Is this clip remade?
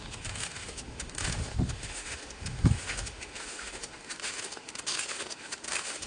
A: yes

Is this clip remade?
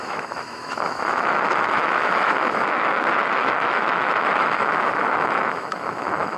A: yes